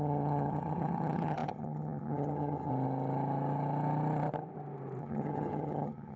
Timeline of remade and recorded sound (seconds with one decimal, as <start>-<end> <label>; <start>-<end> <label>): 0.0-2.7 remade; 2.7-5.0 recorded; 5.0-6.2 remade